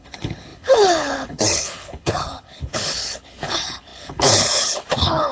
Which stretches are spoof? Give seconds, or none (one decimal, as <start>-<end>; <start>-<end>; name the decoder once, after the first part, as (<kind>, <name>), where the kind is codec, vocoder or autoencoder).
0.0-5.3 (codec, HILCodec)